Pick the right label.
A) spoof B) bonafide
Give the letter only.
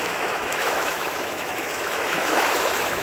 A